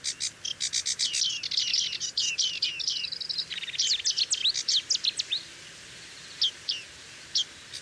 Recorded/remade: recorded